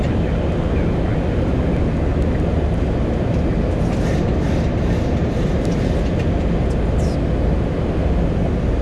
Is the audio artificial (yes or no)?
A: no